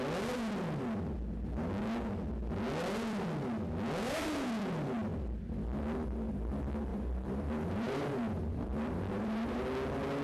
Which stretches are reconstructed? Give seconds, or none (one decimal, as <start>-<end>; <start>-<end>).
6.9-9.6